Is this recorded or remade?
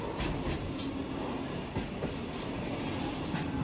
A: recorded